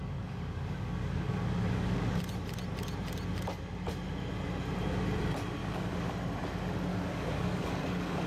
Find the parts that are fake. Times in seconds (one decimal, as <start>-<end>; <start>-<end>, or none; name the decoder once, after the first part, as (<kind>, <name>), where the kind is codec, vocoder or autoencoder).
0.0-2.2 (codec, DAC); 5.6-6.1; 6.9-8.3